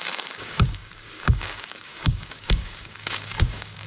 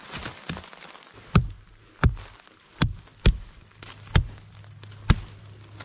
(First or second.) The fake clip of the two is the first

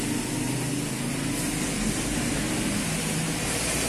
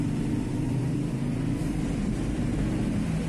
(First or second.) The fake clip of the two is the second